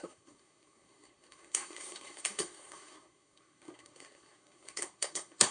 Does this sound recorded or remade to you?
remade